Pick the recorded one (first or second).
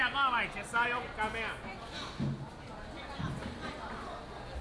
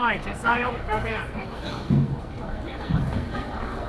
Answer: first